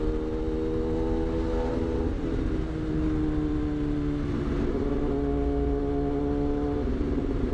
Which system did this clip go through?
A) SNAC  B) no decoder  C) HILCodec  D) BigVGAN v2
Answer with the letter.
B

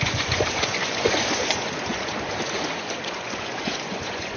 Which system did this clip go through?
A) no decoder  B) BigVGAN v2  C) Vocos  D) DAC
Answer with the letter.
C